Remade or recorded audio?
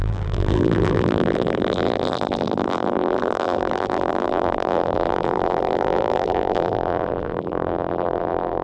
remade